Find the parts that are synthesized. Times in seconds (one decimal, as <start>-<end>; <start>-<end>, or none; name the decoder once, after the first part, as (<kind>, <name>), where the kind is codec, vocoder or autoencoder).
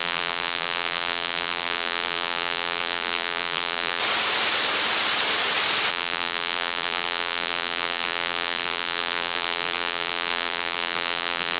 0.0-4.0 (vocoder, BigVGAN v2); 5.9-11.6